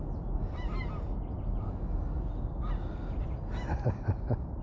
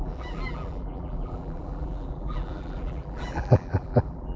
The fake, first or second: second